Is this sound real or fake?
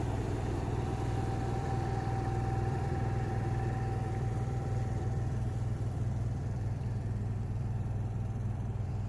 fake